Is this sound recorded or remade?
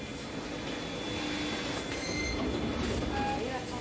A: recorded